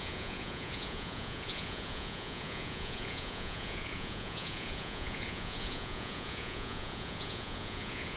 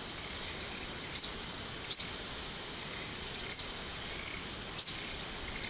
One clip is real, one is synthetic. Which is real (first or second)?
second